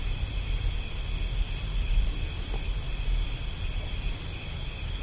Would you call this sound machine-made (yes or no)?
no